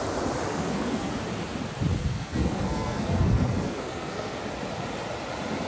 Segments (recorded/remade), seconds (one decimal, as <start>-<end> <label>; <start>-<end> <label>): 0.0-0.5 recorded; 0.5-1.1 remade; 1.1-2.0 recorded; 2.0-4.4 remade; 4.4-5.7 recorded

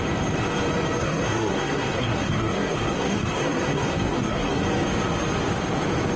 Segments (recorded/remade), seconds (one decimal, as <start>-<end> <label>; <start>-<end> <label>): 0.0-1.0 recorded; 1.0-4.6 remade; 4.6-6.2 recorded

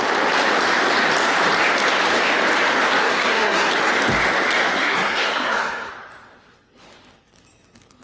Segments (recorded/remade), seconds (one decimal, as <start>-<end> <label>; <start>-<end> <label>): 0.0-3.0 recorded; 3.0-3.7 remade; 3.7-4.8 recorded; 4.8-5.9 remade; 5.9-8.0 recorded